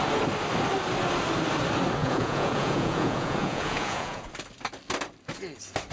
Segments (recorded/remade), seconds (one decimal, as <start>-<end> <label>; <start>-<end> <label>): 0.0-2.0 recorded; 2.0-4.3 remade; 4.3-5.9 recorded